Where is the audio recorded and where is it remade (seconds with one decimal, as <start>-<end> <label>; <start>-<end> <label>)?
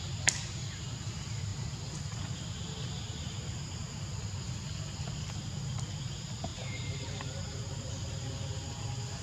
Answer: 0.0-6.5 recorded; 6.5-7.9 remade; 7.9-9.2 recorded